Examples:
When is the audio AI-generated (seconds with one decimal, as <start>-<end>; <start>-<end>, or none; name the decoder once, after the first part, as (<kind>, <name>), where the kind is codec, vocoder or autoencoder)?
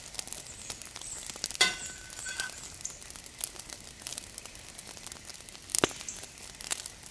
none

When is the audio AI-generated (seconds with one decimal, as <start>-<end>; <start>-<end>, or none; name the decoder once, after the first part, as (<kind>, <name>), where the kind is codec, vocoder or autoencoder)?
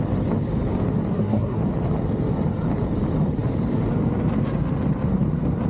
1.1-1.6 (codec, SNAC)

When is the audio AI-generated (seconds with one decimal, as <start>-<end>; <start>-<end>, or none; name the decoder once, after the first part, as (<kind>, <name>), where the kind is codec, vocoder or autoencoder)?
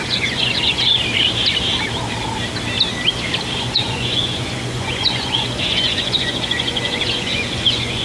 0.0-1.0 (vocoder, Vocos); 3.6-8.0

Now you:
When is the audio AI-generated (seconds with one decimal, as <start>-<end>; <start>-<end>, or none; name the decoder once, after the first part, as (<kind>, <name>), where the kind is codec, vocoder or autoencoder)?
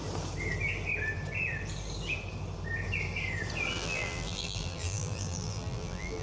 3.7-6.2 (vocoder, BigVGAN v2)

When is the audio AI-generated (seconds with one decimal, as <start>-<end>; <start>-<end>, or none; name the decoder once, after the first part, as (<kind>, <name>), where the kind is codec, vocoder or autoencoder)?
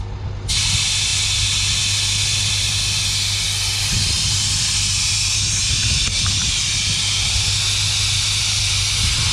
none